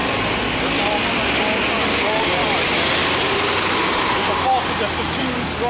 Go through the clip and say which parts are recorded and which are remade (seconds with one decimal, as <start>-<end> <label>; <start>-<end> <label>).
0.0-1.9 recorded; 1.9-2.4 remade; 2.4-5.2 recorded; 5.2-5.7 remade